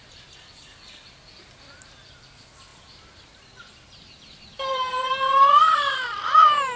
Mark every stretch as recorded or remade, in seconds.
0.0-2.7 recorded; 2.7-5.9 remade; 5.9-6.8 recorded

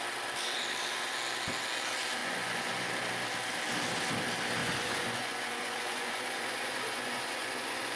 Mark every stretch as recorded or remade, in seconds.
0.0-2.2 recorded; 2.2-2.9 remade; 2.9-4.6 recorded; 4.6-8.0 remade

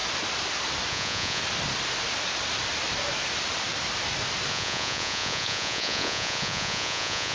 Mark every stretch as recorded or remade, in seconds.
0.0-0.9 recorded; 0.9-1.4 remade; 1.4-4.5 recorded; 4.5-7.3 remade